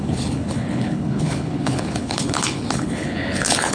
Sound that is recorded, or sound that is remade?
remade